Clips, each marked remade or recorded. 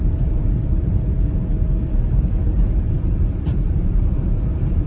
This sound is remade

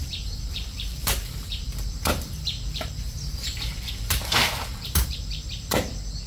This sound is remade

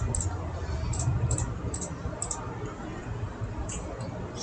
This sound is recorded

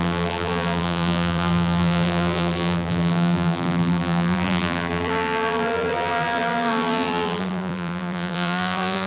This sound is remade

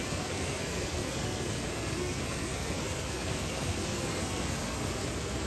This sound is remade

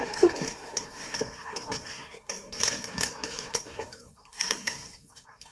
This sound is remade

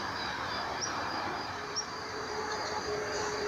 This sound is remade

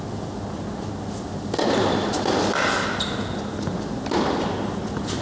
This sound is recorded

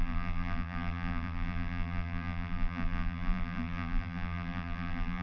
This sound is remade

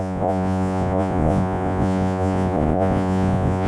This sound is remade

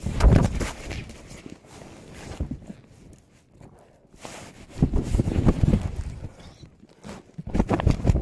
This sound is recorded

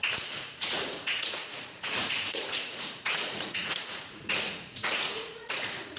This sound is remade